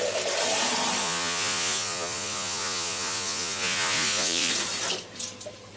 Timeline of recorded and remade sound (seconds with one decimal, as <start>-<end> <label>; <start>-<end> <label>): 0.0-1.0 recorded; 1.0-4.5 remade; 4.5-5.8 recorded